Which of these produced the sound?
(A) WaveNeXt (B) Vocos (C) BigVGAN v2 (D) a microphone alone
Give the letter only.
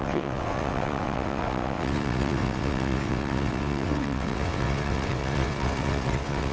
A